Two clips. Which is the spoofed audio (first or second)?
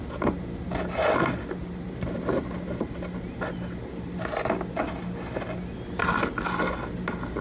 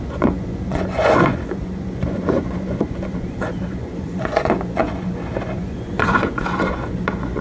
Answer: second